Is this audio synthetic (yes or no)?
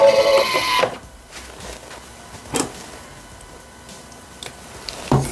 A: no